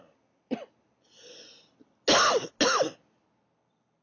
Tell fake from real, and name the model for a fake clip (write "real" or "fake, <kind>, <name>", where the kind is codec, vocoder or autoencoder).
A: real